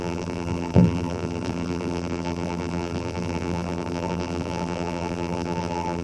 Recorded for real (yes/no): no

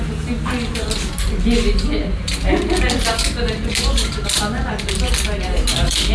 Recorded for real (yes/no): yes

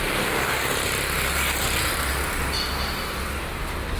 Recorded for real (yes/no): yes